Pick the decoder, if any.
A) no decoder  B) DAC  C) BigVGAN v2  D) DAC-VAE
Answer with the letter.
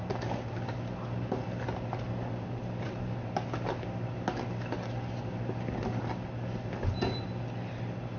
A